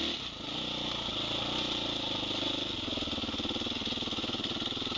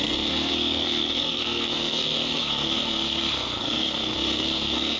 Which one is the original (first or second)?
first